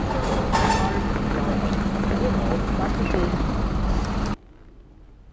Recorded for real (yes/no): yes